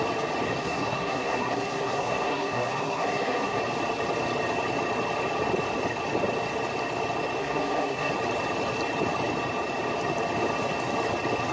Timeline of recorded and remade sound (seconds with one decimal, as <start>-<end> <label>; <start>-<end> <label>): 0.0-0.6 recorded; 0.6-3.6 remade; 3.6-7.4 recorded; 7.4-8.1 remade; 8.1-11.5 recorded